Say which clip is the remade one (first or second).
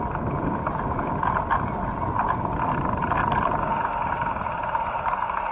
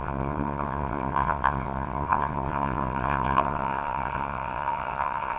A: second